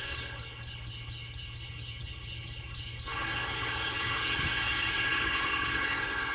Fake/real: fake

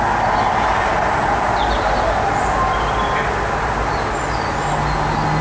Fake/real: real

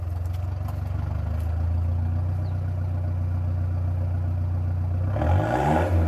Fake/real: real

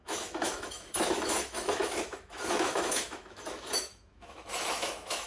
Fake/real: fake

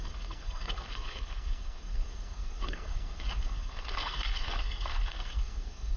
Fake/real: fake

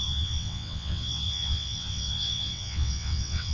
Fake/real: fake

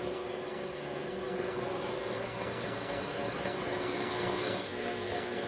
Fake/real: fake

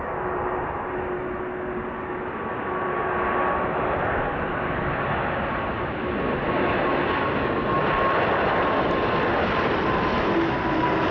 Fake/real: real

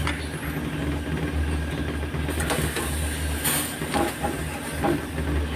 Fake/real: real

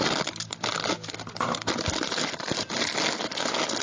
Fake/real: real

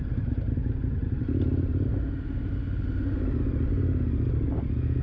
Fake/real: real